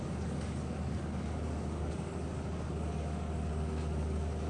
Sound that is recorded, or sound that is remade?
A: remade